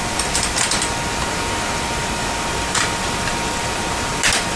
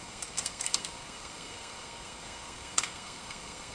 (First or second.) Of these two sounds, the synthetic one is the second